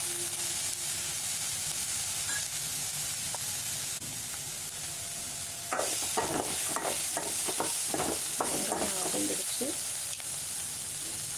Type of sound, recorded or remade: recorded